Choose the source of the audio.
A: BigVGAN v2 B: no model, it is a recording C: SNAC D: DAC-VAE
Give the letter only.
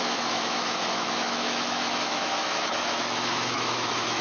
D